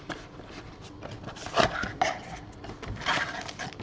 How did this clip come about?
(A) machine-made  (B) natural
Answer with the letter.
B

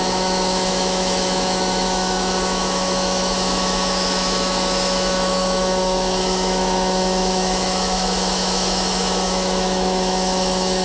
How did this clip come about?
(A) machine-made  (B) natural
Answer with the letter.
A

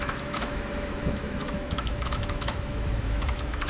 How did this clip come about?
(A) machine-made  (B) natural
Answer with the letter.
A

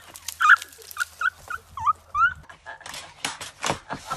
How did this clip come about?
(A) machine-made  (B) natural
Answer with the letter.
B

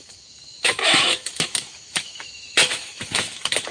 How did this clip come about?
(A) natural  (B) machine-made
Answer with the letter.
B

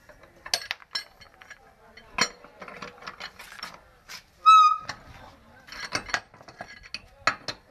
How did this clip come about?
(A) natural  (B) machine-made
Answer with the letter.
A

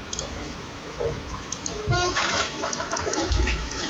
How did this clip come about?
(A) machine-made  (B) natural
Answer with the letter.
A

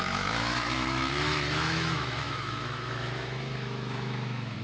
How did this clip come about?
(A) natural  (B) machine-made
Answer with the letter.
B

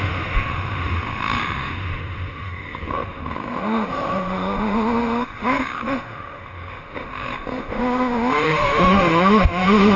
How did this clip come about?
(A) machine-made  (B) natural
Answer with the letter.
A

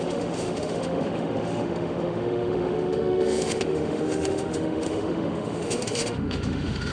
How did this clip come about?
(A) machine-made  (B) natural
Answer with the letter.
A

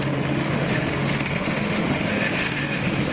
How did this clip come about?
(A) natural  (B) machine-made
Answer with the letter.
B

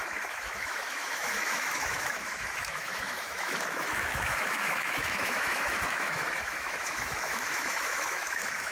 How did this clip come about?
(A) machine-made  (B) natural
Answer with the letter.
A